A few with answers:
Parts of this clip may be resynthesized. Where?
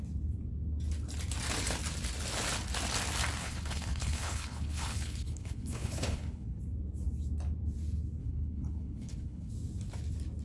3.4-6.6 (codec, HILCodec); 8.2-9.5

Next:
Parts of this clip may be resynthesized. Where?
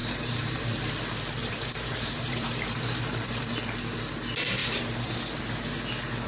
0.0-0.9 (vocoder, BigVGAN v2); 1.4-3.5; 4.6-5.2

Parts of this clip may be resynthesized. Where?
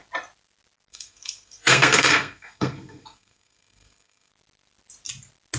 0.9-4.3 (codec, SNAC)